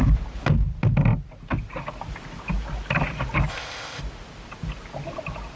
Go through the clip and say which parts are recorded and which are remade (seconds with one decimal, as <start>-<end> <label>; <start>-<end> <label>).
0.0-3.5 recorded; 3.5-4.0 remade; 4.0-5.6 recorded